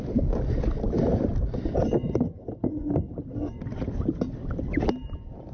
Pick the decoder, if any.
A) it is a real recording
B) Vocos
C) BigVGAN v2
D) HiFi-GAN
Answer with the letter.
A